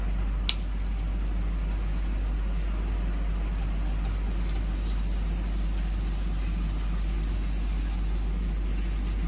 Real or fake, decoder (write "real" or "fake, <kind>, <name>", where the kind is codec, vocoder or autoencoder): real